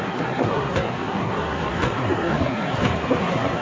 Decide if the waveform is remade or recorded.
remade